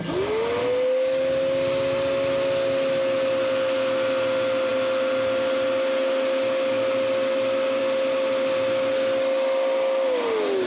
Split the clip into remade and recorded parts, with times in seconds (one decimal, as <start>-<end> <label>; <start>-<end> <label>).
0.0-10.7 recorded